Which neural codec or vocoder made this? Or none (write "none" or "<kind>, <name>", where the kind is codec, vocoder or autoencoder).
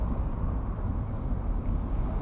none